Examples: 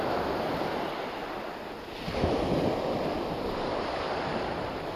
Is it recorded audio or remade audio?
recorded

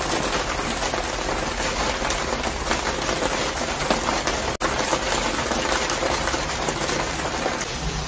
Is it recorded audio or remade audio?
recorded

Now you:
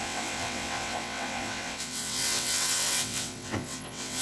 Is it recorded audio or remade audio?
remade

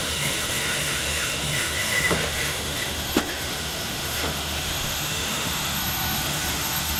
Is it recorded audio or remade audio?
remade